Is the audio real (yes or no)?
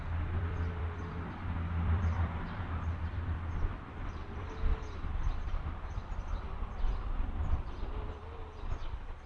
no